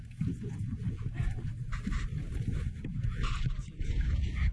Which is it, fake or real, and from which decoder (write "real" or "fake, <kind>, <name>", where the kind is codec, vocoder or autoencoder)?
real